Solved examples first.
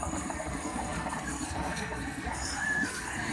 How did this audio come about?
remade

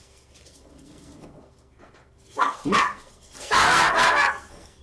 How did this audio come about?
remade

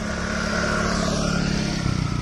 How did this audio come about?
recorded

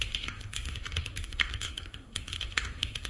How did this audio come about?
remade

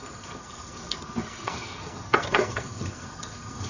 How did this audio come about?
remade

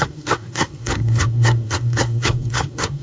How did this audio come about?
remade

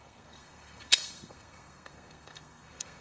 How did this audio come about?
remade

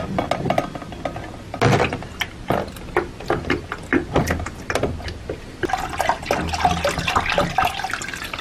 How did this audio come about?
recorded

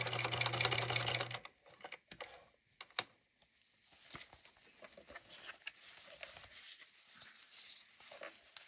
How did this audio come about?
recorded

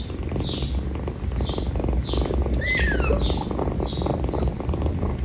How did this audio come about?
recorded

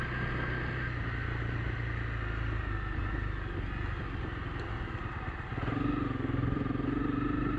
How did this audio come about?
recorded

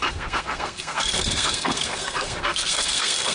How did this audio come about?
remade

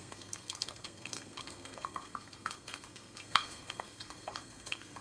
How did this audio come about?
remade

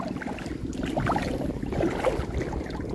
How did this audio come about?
recorded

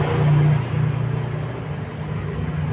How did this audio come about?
recorded